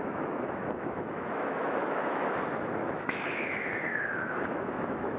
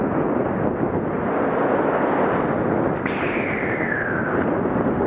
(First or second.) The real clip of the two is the second